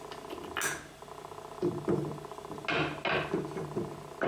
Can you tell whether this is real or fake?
real